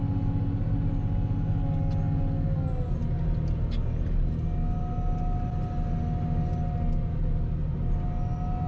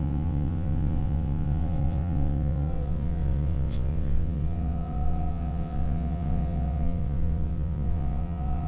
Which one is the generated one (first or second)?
second